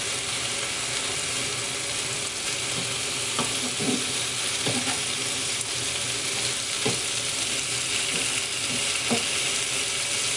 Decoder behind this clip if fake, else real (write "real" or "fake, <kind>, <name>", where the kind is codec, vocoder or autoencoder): real